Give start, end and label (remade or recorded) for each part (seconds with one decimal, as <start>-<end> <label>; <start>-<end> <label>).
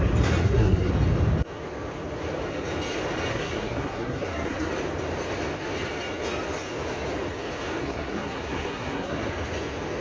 0.0-0.4 recorded; 0.4-0.9 remade; 0.9-3.3 recorded; 3.3-4.7 remade; 4.7-7.8 recorded; 7.8-9.3 remade; 9.3-10.0 recorded